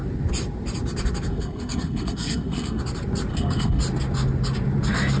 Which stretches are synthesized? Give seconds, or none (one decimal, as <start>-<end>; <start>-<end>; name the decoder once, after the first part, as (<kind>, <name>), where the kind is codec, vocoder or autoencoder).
1.3-2.8 (codec, SNAC); 3.3-3.8